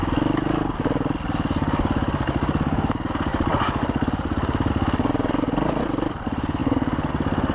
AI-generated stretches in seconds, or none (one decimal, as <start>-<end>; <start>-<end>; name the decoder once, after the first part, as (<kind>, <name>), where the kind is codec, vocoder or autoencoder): none